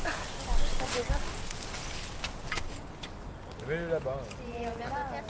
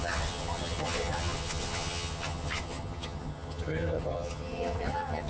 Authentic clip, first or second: first